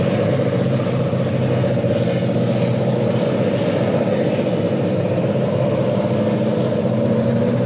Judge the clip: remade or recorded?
recorded